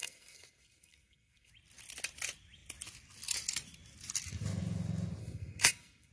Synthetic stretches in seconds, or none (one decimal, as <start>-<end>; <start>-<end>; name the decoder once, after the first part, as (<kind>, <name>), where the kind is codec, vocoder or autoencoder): 0.0-1.5 (codec, SNAC); 5.2-6.1